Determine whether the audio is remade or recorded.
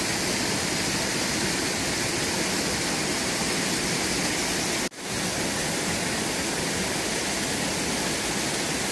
recorded